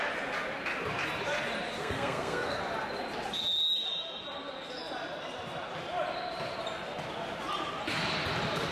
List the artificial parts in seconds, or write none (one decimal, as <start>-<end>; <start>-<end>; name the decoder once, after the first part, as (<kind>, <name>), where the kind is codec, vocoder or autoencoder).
1.8-2.6 (codec, SNAC)